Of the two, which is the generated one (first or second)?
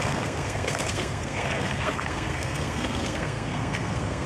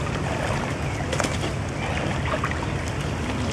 first